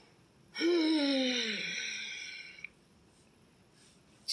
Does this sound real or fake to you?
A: real